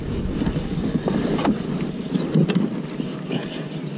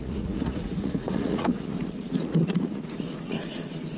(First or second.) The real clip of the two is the first